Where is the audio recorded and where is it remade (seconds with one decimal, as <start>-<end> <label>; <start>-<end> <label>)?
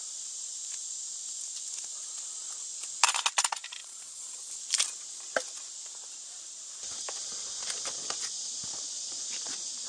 0.0-3.8 recorded; 3.8-4.5 remade; 4.5-9.9 recorded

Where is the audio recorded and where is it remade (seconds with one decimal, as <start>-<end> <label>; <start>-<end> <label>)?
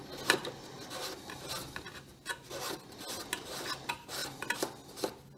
0.0-5.4 recorded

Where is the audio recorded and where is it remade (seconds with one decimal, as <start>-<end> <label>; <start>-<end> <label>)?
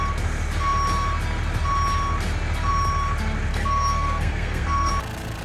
0.0-3.5 recorded; 3.5-4.9 remade; 4.9-5.4 recorded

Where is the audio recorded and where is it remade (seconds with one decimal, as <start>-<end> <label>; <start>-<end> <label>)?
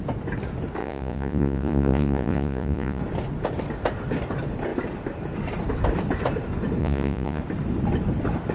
0.0-0.8 recorded; 0.8-3.0 remade; 3.0-6.8 recorded; 6.8-7.4 remade; 7.4-8.5 recorded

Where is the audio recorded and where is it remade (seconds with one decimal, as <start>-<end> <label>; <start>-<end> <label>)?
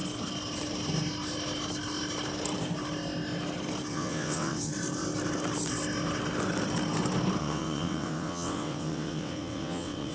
0.0-3.9 recorded; 3.9-4.7 remade; 4.7-7.4 recorded; 7.4-10.1 remade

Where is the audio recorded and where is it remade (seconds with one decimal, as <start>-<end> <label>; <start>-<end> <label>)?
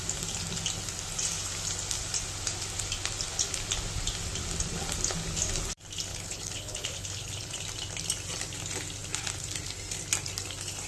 0.0-6.1 recorded; 6.1-7.5 remade; 7.5-10.9 recorded